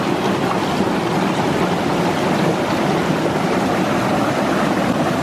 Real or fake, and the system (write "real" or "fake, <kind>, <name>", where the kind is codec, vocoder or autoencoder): real